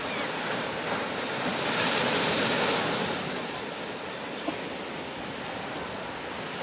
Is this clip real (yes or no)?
yes